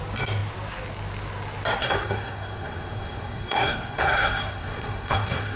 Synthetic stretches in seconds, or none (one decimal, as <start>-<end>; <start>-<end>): 1.8-5.6

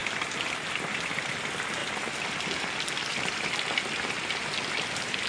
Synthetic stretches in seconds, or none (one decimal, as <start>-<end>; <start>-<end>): none